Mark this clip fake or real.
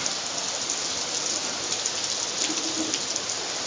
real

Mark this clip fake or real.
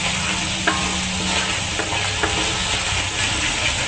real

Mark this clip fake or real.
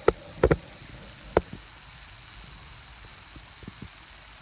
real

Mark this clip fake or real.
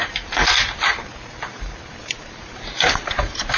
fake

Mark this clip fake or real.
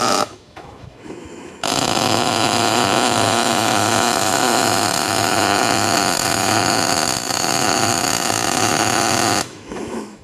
fake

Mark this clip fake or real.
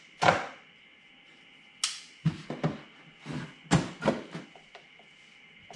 real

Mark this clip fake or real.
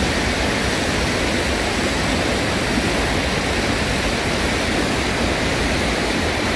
real